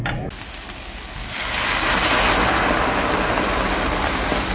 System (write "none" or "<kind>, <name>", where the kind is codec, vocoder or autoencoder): none